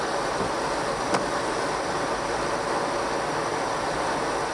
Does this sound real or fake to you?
real